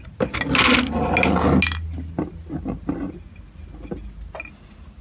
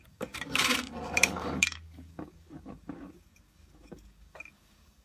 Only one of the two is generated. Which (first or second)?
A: second